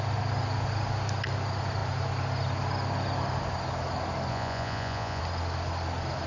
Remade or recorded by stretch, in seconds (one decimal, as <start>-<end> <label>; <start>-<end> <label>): 0.0-4.3 recorded; 4.3-5.2 remade; 5.2-6.3 recorded